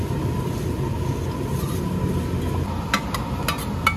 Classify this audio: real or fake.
real